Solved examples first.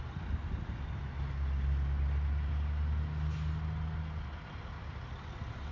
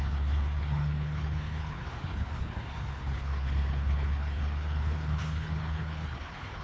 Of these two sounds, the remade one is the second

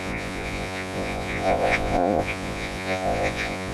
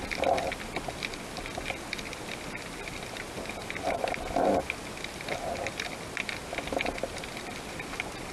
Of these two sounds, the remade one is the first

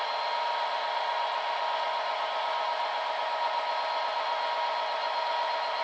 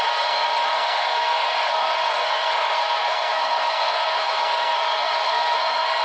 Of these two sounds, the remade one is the second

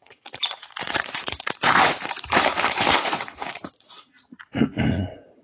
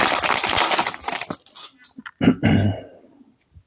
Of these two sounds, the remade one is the first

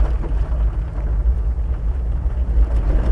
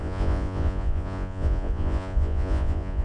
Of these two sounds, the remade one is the second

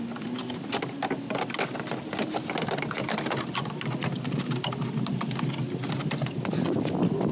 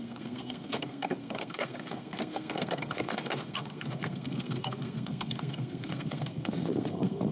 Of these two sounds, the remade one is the second